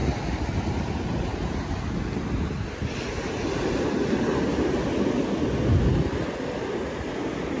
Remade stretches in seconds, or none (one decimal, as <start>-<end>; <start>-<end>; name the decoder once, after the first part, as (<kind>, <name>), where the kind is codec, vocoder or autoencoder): none